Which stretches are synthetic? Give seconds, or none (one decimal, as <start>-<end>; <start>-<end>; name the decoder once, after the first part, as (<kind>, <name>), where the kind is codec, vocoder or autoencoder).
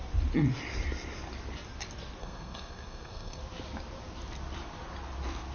2.2-3.4 (codec, SNAC)